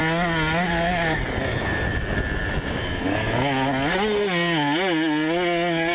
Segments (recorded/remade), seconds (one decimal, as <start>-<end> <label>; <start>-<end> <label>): 0.0-5.9 recorded